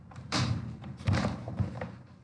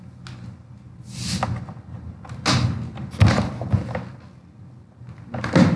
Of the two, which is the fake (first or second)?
first